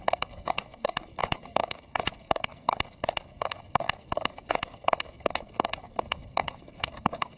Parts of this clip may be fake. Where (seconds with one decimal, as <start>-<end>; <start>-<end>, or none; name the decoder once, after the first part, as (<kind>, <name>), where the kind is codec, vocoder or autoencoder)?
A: 0.0-7.4 (codec, SNAC)